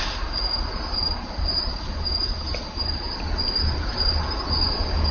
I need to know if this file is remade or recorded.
recorded